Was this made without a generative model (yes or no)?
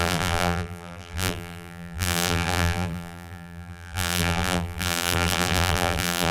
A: no